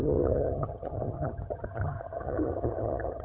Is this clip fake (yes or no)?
yes